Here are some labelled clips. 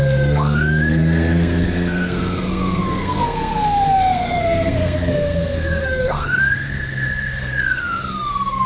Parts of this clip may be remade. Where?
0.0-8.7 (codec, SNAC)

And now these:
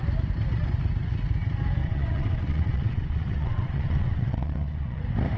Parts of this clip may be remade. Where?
1.8-5.0 (vocoder, WaveNeXt)